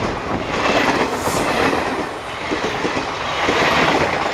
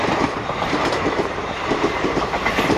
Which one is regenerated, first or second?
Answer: second